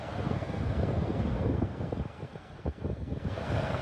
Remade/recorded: remade